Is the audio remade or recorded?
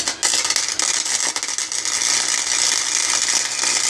recorded